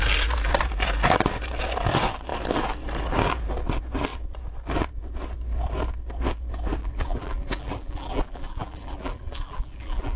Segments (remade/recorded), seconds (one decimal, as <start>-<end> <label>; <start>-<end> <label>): 0.0-6.8 recorded; 6.8-10.2 remade